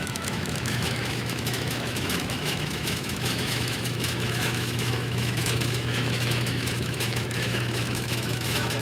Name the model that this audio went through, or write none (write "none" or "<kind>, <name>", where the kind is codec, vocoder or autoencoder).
autoencoder, DAC-VAE